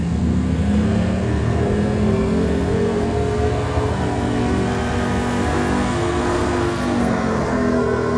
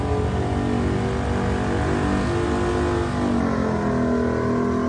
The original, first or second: second